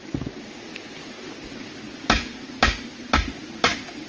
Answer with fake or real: real